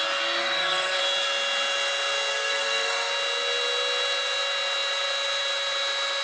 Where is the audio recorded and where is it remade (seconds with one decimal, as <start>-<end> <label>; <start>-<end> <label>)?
0.0-0.4 recorded; 0.4-1.0 remade; 1.0-2.3 recorded; 2.3-3.1 remade; 3.1-6.2 recorded